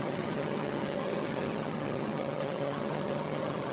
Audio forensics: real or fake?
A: fake